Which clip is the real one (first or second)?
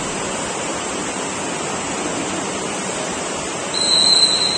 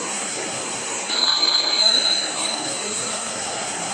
first